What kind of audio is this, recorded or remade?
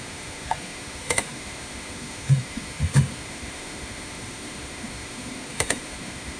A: remade